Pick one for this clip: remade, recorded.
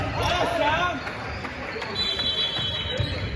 recorded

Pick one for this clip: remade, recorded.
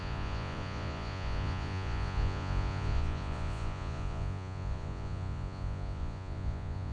remade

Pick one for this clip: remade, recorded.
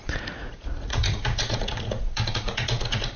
remade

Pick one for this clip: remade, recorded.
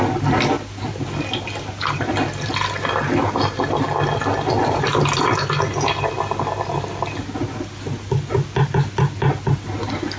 recorded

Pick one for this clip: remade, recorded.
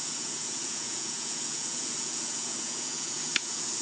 remade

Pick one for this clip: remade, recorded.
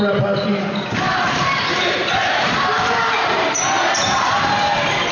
remade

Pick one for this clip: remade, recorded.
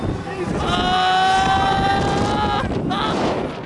recorded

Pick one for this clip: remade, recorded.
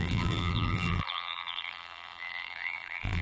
remade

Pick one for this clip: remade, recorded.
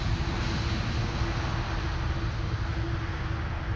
recorded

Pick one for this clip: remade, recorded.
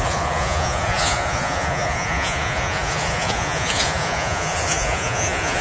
remade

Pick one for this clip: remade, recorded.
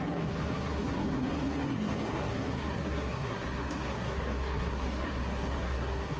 remade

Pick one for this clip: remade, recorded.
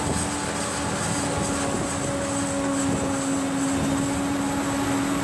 recorded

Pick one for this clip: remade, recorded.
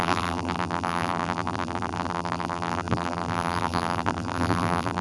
remade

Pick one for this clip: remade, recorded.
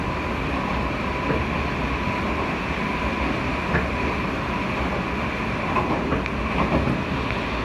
recorded